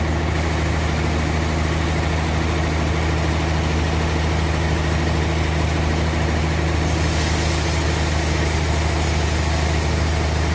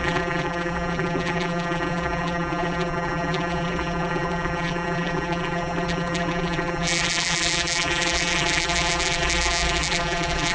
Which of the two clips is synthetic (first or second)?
second